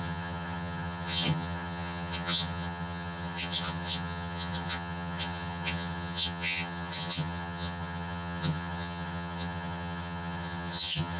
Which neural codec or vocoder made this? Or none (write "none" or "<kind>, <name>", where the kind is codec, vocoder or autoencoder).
vocoder, HiFi-GAN